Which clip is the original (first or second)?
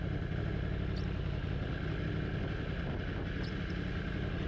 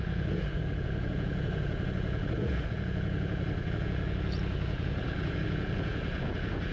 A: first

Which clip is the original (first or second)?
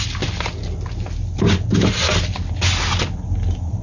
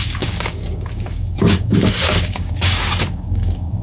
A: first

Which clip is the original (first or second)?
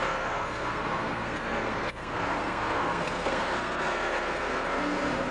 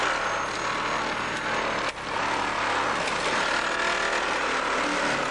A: second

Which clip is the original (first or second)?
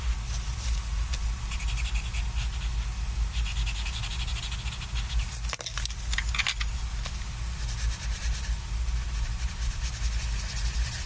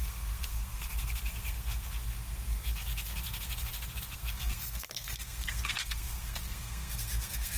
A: first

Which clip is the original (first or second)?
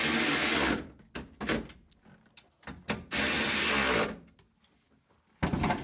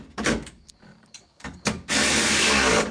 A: first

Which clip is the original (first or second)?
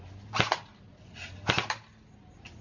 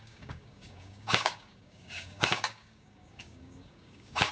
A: first